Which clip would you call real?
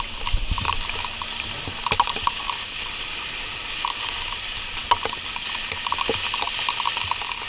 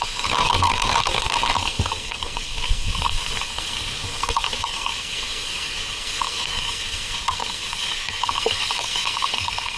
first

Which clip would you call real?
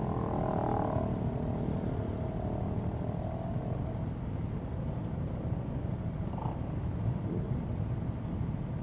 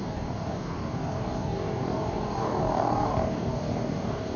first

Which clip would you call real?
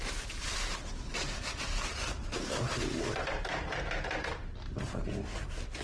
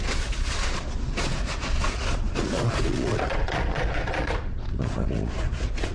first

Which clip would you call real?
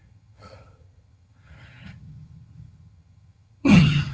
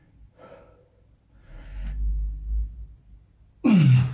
second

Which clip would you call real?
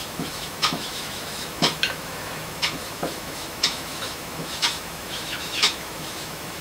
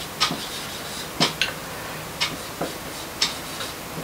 second